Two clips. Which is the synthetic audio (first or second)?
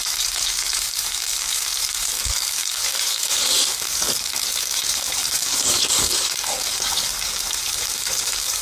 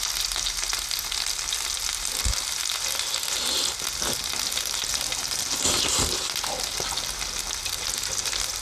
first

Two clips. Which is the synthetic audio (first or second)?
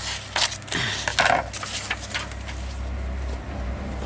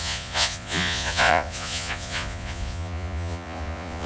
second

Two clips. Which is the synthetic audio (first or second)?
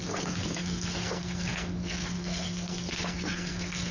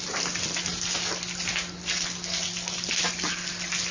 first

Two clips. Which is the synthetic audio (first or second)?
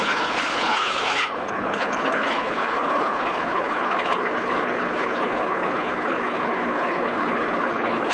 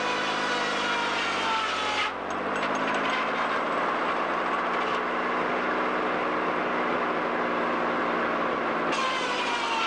first